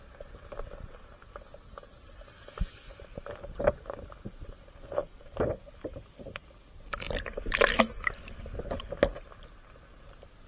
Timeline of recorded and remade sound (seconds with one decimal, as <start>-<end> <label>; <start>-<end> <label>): 0.0-10.5 recorded